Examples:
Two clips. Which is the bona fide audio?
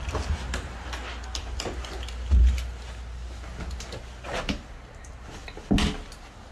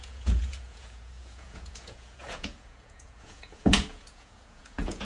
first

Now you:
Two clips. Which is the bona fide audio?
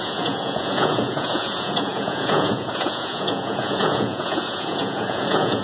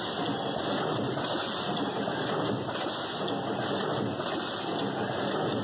second